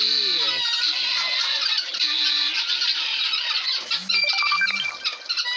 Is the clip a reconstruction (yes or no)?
no